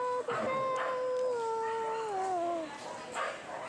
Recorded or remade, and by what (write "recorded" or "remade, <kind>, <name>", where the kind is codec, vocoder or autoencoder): recorded